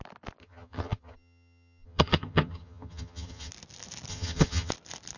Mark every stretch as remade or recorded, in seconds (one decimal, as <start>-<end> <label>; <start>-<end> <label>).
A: 0.0-0.4 recorded; 0.4-3.5 remade; 3.5-4.1 recorded; 4.1-4.7 remade; 4.7-5.2 recorded